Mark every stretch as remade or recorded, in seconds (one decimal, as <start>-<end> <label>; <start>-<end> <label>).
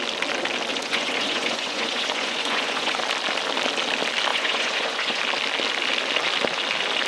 0.0-0.7 recorded; 0.7-3.0 remade; 3.0-4.3 recorded; 4.3-5.2 remade; 5.2-7.1 recorded